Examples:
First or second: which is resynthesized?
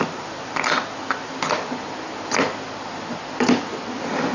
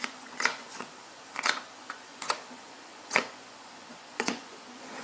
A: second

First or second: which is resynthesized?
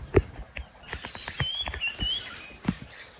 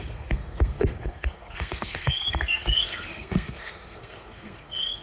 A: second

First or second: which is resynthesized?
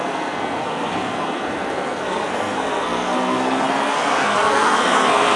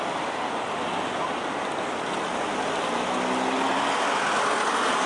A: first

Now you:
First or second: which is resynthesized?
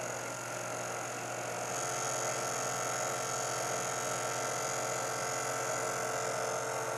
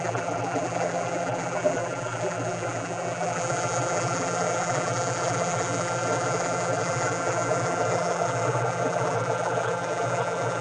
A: second